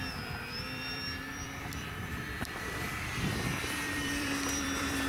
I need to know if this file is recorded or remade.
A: remade